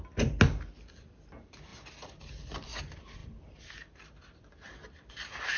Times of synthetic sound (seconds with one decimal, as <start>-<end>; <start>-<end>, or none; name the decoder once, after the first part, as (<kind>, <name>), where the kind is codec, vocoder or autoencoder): none